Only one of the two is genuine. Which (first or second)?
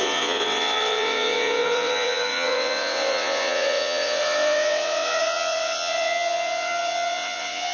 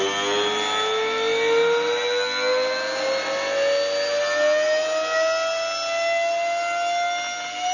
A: second